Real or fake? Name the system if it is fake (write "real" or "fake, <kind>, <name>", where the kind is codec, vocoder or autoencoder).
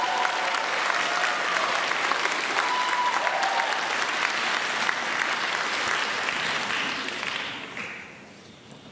real